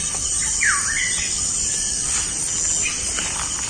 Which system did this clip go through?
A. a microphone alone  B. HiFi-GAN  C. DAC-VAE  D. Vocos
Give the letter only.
A